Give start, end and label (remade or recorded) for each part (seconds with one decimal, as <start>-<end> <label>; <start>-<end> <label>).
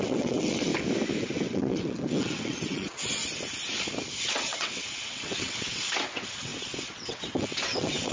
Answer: 0.0-0.7 remade; 0.7-1.2 recorded; 1.2-3.2 remade; 3.2-4.2 recorded; 4.2-8.1 remade